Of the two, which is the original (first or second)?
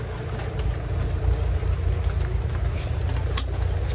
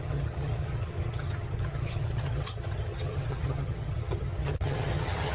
first